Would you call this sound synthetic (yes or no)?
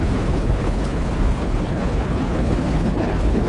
yes